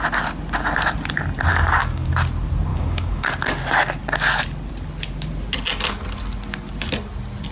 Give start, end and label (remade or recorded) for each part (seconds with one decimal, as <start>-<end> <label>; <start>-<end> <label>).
0.0-1.5 recorded; 1.5-2.1 remade; 2.1-2.7 recorded; 2.7-3.3 remade; 3.3-7.5 recorded